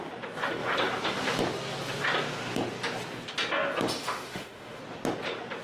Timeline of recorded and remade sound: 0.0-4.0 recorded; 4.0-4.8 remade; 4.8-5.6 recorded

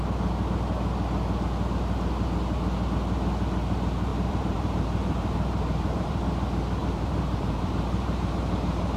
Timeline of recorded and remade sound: 0.0-4.1 recorded; 4.1-6.2 remade; 6.2-6.8 recorded; 6.8-8.4 remade; 8.4-9.0 recorded

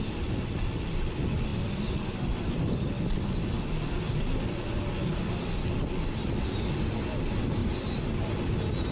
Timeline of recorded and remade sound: 0.0-8.9 recorded

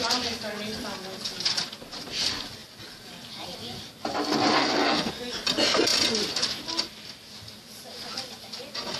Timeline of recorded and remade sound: 0.0-4.6 recorded; 4.6-5.1 remade; 5.1-9.0 recorded

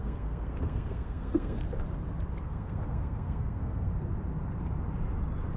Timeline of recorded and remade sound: 0.0-1.6 remade; 1.6-2.3 recorded; 2.3-3.9 remade; 3.9-5.6 recorded